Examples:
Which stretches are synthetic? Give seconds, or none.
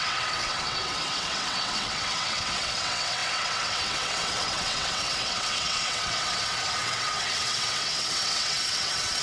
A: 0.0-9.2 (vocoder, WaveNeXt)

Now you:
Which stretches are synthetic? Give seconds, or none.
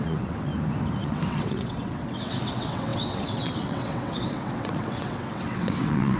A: 0.0-0.5 (vocoder, WaveNeXt); 1.0-6.2